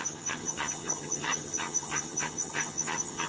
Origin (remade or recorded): remade